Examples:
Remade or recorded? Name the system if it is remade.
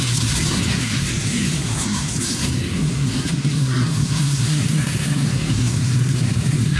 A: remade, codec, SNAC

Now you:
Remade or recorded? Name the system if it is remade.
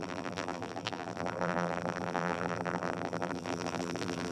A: remade, vocoder, BigVGAN v2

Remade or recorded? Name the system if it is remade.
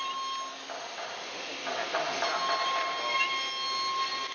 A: recorded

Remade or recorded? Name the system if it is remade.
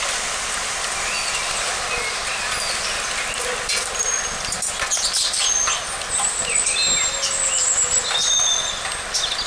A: recorded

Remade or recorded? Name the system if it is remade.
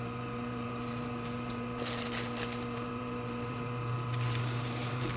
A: remade, vocoder, BigVGAN v2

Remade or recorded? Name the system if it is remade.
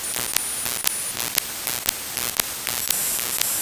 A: recorded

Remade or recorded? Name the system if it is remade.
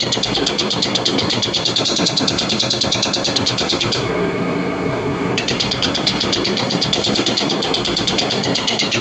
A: remade, codec, SNAC